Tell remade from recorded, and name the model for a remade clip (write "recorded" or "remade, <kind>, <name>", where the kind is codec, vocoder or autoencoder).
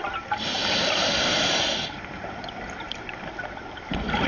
recorded